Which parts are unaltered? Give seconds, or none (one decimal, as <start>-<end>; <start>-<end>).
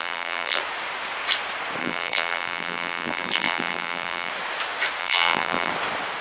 0.6-1.8; 4.3-5.0; 5.7-6.2